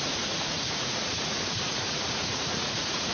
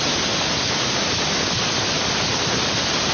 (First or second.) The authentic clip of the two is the second